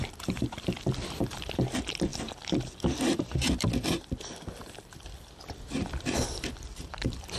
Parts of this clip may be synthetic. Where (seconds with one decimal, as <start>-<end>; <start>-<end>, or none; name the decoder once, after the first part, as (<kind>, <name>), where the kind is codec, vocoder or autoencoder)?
2.1-6.5 (vocoder, BigVGAN v2)